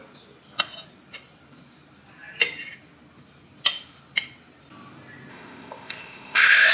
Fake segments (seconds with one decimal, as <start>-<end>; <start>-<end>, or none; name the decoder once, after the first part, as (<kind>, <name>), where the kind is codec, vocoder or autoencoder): 5.3-6.7 (codec, ZipCodec)